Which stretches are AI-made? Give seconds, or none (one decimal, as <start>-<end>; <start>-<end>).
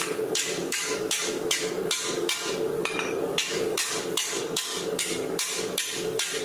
0.0-6.4